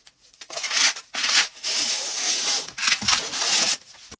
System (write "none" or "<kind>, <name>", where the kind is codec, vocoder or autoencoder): vocoder, Vocos